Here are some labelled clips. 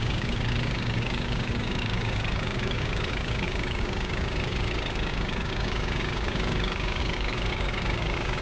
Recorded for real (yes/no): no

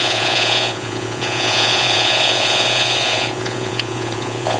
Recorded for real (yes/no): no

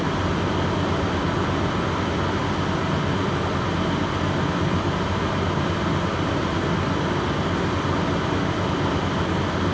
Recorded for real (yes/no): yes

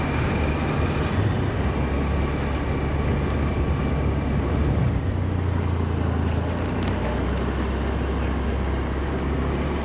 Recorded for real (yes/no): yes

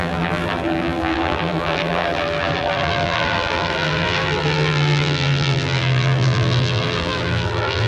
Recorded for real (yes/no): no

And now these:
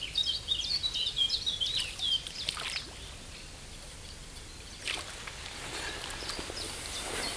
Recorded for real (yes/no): yes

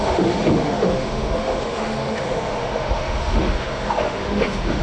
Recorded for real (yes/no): no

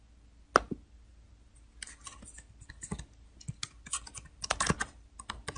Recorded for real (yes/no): yes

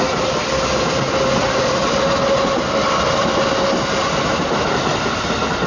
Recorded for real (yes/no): yes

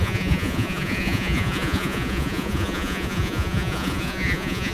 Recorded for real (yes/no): no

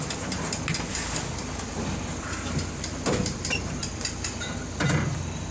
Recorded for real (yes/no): yes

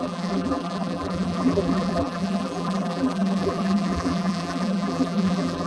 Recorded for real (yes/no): no